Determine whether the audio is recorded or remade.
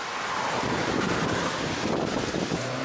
remade